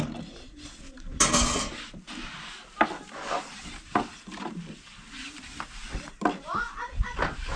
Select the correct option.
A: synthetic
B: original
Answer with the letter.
B